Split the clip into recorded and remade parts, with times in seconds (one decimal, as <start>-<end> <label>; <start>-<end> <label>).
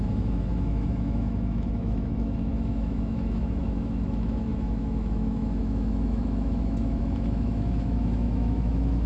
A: 0.0-9.1 remade